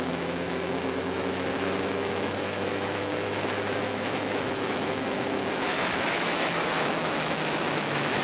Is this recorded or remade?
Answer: remade